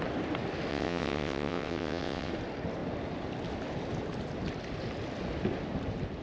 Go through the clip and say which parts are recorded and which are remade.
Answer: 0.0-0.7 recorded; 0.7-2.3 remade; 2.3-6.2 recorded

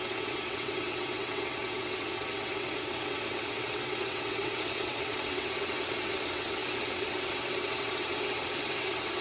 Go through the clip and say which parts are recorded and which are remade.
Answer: 0.0-9.2 remade

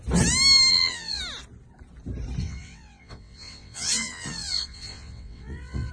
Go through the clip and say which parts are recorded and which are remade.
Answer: 0.0-0.7 recorded; 0.7-1.2 remade; 1.2-2.4 recorded; 2.4-5.9 remade

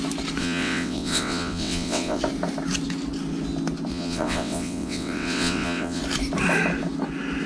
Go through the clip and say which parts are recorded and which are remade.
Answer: 0.0-0.4 recorded; 0.4-2.2 remade; 2.2-3.9 recorded; 3.9-6.0 remade; 6.0-7.5 recorded